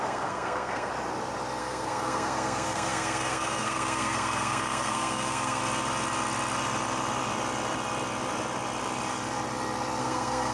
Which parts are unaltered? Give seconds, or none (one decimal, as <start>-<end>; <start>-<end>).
0.9-1.6; 5.6-10.0